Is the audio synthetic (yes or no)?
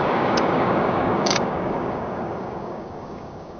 yes